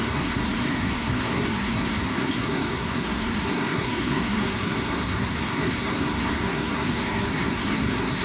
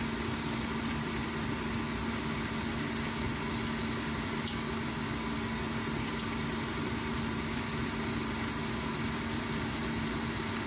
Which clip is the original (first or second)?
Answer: second